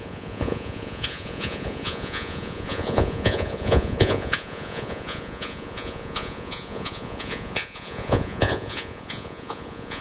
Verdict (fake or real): fake